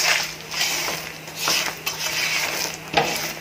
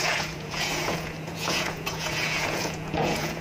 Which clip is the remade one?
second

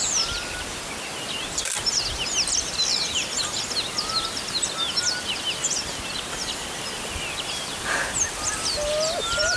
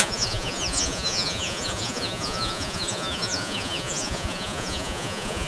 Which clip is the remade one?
second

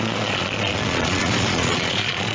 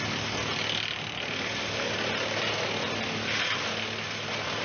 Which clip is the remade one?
first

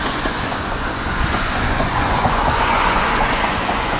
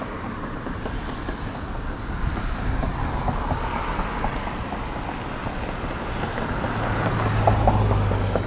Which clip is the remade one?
first